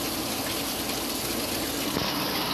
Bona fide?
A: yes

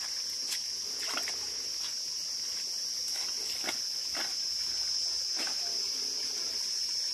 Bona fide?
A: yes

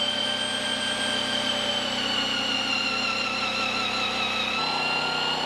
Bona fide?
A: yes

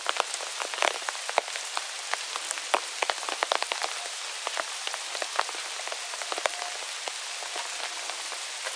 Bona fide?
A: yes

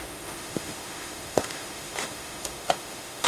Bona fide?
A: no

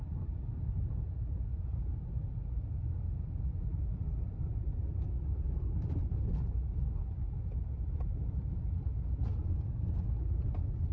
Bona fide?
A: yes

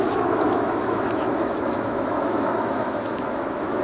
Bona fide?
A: no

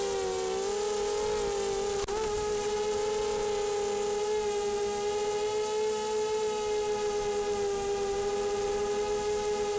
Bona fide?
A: yes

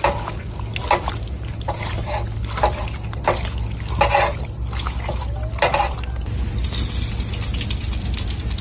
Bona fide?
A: yes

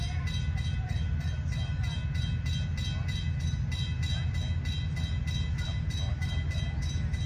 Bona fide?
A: yes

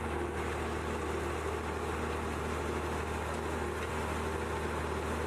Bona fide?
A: yes